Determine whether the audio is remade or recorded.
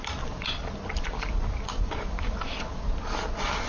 recorded